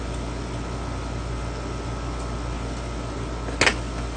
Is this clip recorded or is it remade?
recorded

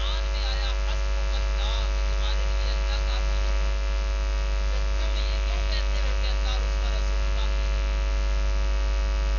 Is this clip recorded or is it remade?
recorded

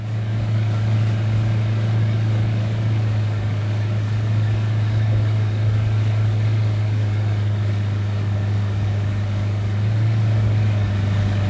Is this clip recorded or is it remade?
remade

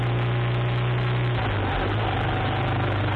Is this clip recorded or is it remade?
recorded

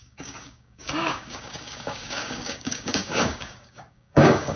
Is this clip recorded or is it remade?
remade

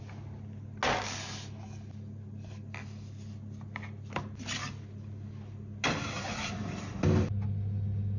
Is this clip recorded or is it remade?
recorded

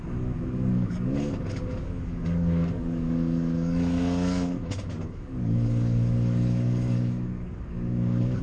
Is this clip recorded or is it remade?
remade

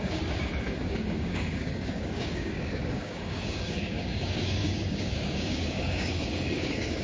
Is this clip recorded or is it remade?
remade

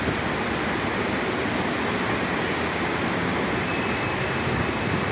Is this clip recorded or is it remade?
recorded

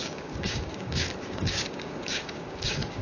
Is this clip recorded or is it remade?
remade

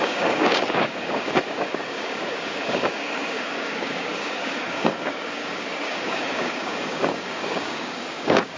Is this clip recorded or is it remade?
remade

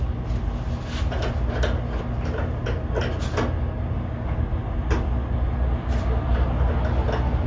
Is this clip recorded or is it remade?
recorded